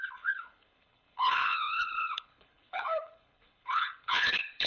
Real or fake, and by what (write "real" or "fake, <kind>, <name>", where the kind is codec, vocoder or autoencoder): fake, codec, HILCodec